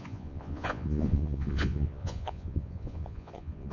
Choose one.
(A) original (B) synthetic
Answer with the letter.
B